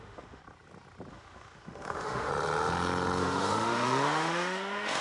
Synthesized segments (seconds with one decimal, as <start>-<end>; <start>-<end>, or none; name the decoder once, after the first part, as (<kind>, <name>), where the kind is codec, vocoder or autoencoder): 0.0-0.4 (autoencoder, DAC-VAE); 1.1-2.3; 3.2-5.0